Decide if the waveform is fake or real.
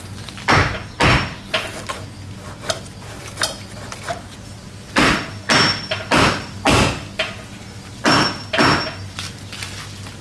real